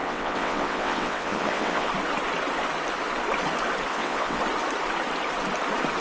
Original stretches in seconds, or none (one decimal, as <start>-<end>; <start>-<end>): 1.9-3.9; 4.4-6.0